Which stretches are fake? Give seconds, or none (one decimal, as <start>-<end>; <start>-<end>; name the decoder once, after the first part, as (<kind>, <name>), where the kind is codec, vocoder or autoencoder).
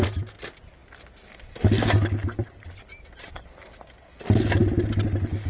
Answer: none